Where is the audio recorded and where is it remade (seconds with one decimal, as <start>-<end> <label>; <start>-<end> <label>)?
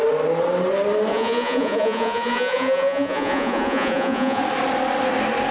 0.0-1.1 recorded; 1.1-4.4 remade; 4.4-5.5 recorded